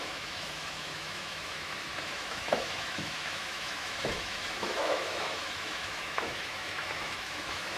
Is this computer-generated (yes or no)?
yes